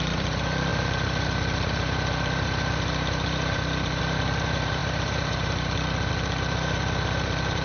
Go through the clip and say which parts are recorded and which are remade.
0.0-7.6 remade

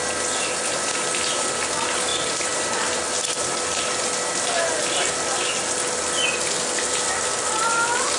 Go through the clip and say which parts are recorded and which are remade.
0.0-8.2 recorded

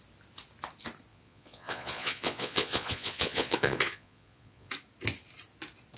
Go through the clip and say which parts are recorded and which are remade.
0.0-1.1 recorded; 1.1-4.7 remade; 4.7-6.0 recorded

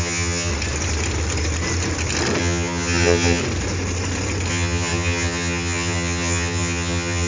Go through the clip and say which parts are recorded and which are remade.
0.0-0.5 remade; 0.5-2.4 recorded; 2.4-3.4 remade; 3.4-4.5 recorded; 4.5-7.3 remade

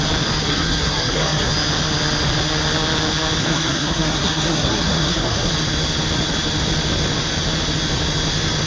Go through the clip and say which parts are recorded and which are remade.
0.0-0.4 recorded; 0.4-1.5 remade; 1.5-3.4 recorded; 3.4-5.5 remade; 5.5-8.7 recorded

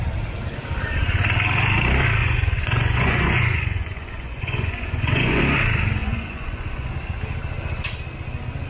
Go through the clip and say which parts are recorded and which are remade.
0.0-2.2 recorded; 2.2-5.4 remade; 5.4-6.0 recorded; 6.0-6.9 remade; 6.9-8.7 recorded